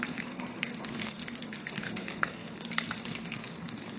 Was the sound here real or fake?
fake